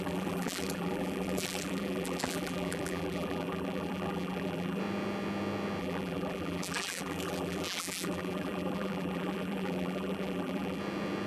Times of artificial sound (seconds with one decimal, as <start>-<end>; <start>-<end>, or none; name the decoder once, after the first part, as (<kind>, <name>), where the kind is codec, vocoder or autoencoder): 0.0-4.8 (vocoder, BigVGAN v2); 5.8-10.8